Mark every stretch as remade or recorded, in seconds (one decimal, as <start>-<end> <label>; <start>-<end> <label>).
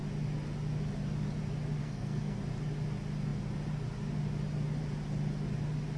0.0-1.8 recorded; 1.8-2.4 remade; 2.4-6.0 recorded